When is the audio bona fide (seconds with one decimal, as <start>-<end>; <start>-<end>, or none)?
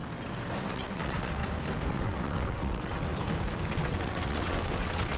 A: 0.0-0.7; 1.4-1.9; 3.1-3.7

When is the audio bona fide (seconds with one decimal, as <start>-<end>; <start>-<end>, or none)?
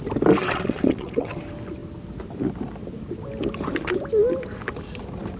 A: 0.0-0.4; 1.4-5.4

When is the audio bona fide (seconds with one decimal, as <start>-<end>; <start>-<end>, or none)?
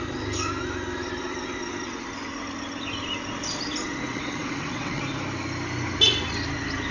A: 0.0-4.1; 5.0-6.9